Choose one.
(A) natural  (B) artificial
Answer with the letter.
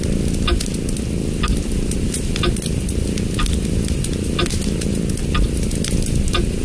A